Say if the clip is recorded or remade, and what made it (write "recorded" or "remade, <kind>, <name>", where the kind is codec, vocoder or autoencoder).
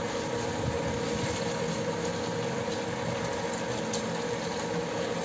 recorded